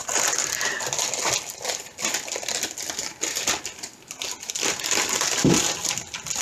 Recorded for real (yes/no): yes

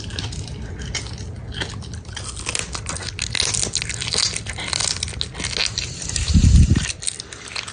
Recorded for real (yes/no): yes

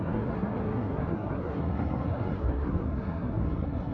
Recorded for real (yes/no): no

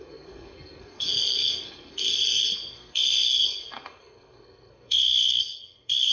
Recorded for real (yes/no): no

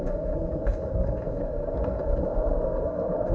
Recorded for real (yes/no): no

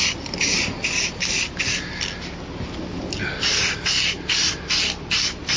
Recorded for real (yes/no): yes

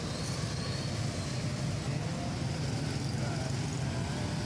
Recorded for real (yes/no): yes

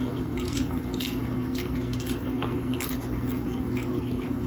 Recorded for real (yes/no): no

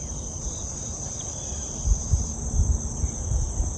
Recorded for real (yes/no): yes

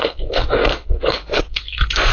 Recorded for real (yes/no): no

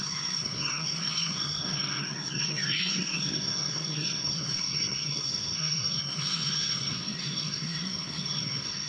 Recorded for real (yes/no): no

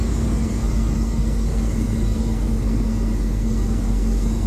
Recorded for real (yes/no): no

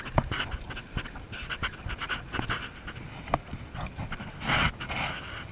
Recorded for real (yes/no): yes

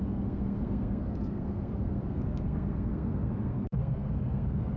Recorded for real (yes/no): no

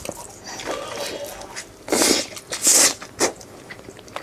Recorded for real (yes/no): yes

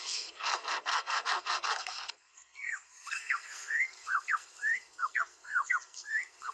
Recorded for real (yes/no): no